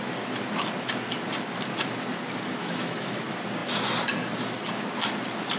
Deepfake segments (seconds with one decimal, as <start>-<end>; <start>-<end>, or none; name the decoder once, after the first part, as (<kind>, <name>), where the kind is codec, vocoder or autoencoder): 2.6-3.2 (autoencoder, DAC-VAE)